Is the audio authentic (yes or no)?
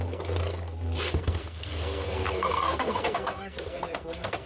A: no